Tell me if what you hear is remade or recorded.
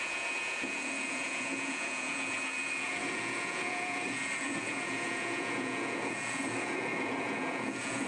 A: remade